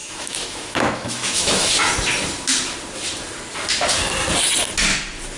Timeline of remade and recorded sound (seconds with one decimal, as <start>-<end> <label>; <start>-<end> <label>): 0.0-1.7 remade; 1.7-5.4 recorded